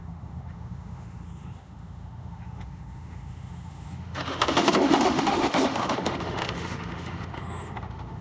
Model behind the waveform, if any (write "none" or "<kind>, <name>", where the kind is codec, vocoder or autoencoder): autoencoder, DAC-VAE